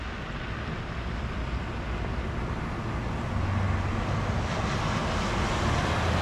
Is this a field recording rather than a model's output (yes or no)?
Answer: yes